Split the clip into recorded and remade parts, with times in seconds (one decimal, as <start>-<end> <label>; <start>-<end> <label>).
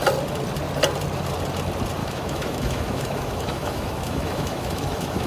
0.0-2.0 recorded; 2.0-5.3 remade